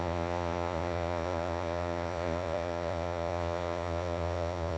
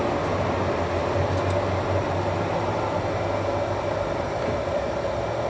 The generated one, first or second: first